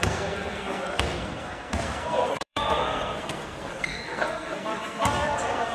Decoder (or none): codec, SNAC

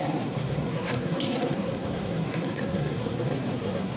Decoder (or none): codec, SNAC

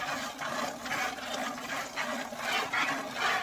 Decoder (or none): none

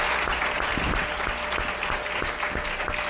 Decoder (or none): none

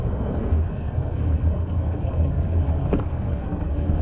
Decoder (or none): codec, SNAC